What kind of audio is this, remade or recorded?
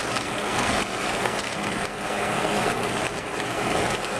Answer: remade